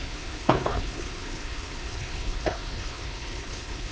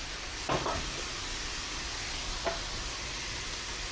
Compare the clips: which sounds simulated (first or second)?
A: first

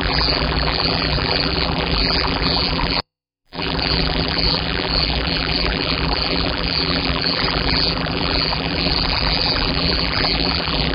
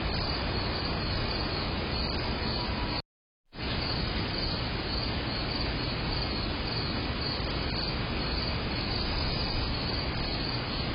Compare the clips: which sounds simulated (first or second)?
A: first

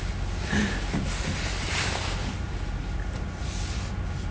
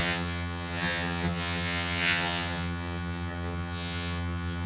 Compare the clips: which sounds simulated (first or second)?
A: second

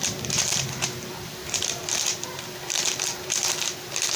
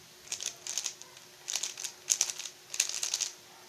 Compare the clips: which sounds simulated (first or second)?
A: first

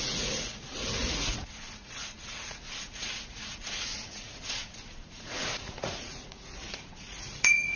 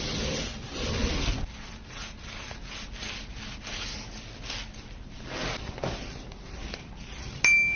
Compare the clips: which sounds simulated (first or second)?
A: first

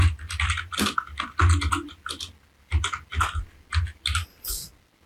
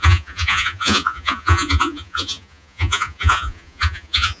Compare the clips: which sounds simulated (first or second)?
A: second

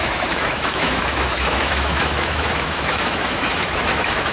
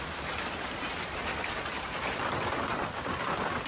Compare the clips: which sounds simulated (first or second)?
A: first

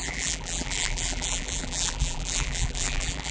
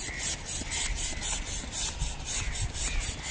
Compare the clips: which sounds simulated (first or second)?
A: first